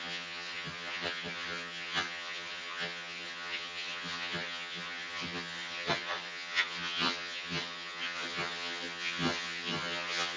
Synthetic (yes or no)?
yes